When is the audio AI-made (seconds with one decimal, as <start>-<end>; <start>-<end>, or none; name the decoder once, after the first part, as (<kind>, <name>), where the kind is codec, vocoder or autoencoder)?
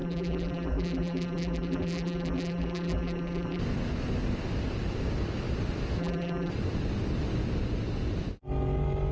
0.0-3.6 (vocoder, BigVGAN v2); 6.0-6.5